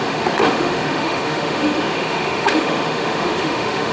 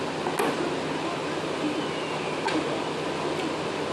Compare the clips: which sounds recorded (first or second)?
second